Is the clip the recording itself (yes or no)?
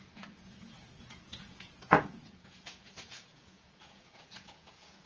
no